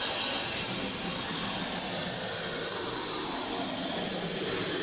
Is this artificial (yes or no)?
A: no